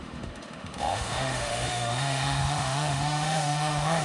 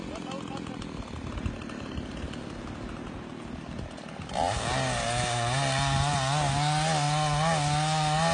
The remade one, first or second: first